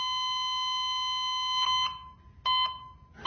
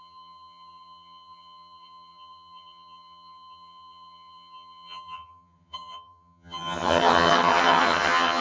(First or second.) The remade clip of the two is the second